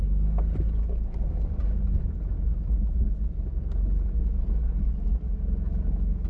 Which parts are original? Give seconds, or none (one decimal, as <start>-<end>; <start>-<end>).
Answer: 0.0-6.3